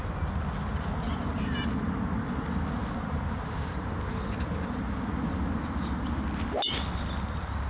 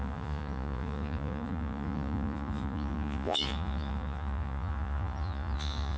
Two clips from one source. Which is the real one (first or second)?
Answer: first